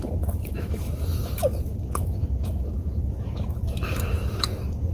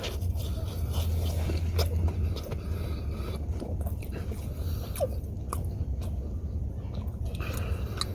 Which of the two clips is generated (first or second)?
first